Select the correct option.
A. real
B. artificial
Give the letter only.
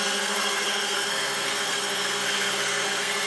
B